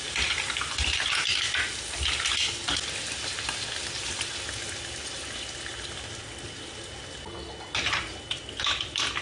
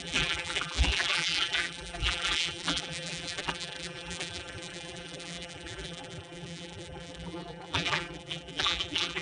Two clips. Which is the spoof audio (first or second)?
second